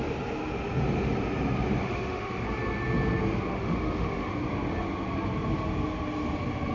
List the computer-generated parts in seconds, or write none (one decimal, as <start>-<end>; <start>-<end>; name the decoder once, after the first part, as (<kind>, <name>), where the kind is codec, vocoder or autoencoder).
1.8-2.4 (autoencoder, DAC-VAE); 3.5-4.3